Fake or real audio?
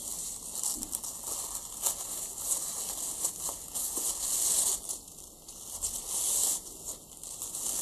real